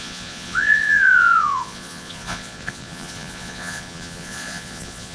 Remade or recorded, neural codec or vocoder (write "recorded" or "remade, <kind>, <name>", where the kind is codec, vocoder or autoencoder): remade, vocoder, Vocos